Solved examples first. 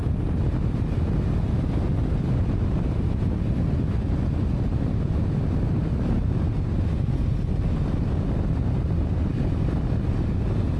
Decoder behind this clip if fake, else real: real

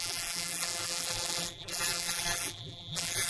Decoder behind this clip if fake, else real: fake, vocoder, BigVGAN v2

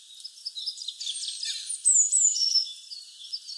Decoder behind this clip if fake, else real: real